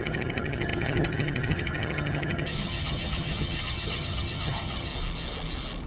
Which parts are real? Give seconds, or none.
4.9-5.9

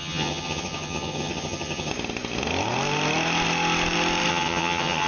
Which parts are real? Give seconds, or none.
1.9-4.3

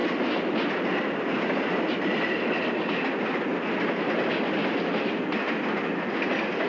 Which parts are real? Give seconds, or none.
0.0-6.7